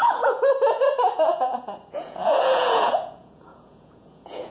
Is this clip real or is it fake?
fake